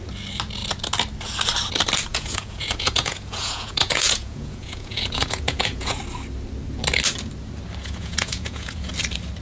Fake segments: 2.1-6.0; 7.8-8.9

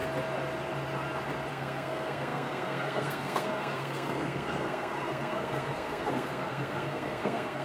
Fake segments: 1.5-7.6